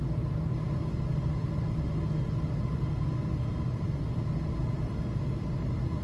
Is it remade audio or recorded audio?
recorded